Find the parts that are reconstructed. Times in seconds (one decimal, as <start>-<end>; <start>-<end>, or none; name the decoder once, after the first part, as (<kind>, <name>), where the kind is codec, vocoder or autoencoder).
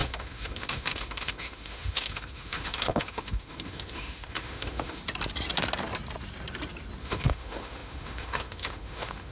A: 0.0-5.0 (autoencoder, DAC-VAE); 7.0-9.3